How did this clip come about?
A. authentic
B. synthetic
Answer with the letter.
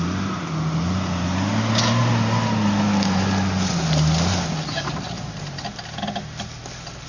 A